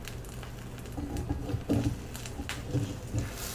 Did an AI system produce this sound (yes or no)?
no